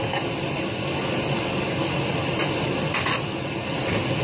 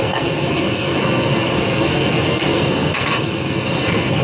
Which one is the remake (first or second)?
second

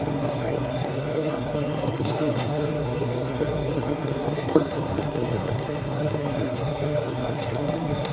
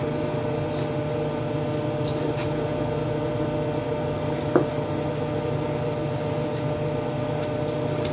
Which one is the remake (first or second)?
first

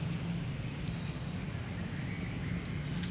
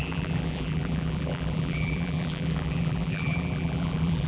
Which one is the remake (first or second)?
second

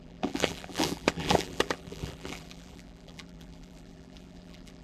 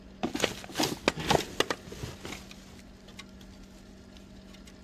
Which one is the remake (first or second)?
first